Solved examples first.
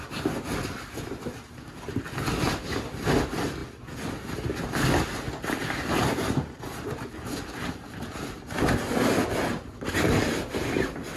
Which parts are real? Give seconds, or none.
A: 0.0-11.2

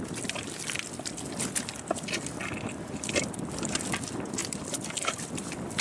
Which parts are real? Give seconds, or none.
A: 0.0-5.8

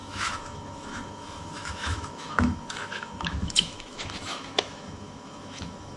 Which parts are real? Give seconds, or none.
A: none